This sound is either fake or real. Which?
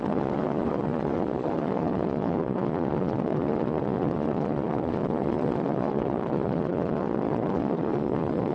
fake